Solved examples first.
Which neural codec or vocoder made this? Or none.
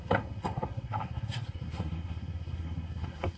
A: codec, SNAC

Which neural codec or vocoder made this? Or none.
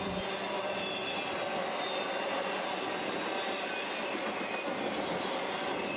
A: none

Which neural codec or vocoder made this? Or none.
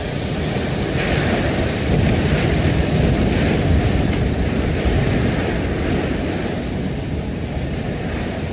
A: vocoder, BigVGAN v2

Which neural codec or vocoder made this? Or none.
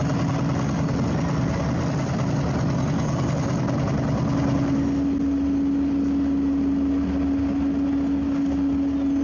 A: none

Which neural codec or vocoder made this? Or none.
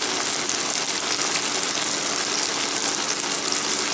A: none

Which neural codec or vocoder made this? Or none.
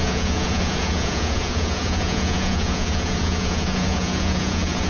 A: vocoder, Vocos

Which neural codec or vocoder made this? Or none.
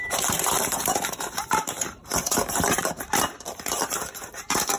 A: vocoder, BigVGAN v2